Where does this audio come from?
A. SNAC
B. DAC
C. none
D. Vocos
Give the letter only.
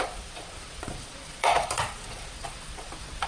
D